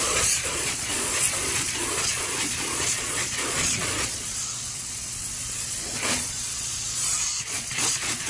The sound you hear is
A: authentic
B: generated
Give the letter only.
B